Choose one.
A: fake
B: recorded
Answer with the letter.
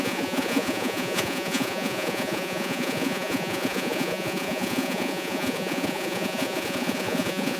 A